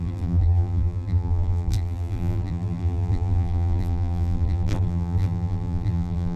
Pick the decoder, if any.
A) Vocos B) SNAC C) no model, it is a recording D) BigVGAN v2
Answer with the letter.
D